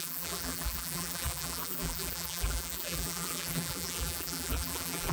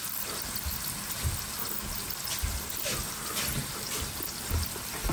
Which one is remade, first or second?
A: first